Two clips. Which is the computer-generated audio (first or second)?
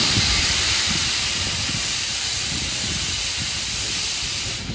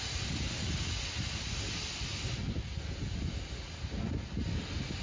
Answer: first